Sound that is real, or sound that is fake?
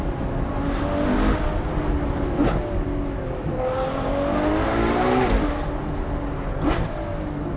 real